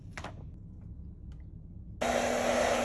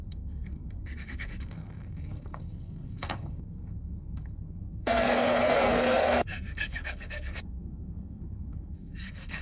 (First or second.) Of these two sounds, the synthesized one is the second